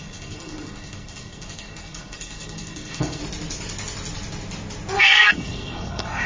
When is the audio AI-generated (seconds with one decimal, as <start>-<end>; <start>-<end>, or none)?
0.0-3.2; 5.0-6.3